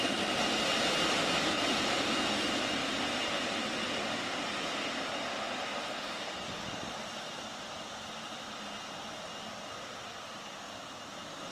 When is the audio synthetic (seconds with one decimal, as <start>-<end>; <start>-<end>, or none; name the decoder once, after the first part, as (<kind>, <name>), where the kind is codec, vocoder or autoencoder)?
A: none